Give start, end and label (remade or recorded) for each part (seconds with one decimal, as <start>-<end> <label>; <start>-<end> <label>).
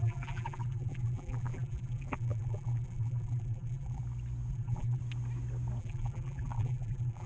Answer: 0.0-4.0 remade; 4.0-4.5 recorded; 4.5-5.0 remade; 5.0-5.8 recorded; 5.8-7.3 remade